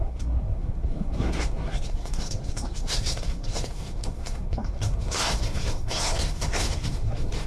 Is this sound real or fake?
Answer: fake